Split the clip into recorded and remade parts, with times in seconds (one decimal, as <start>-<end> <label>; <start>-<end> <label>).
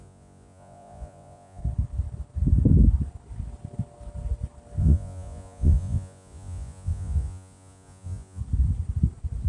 0.0-1.6 remade; 1.6-4.8 recorded; 4.8-8.4 remade; 8.4-9.5 recorded